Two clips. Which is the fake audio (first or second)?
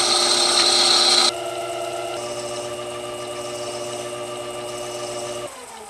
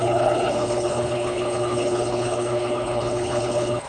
second